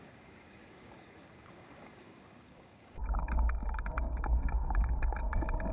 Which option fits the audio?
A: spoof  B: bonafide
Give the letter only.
A